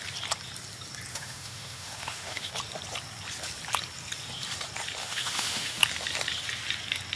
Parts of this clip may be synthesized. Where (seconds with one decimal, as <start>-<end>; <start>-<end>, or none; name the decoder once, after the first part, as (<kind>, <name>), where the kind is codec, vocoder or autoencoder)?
1.1-2.5 (autoencoder, DAC-VAE); 5.0-5.8